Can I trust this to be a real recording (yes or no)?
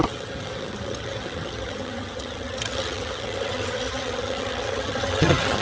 no